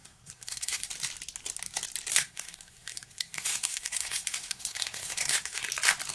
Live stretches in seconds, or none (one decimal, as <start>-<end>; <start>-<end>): 0.9-2.1; 5.6-6.1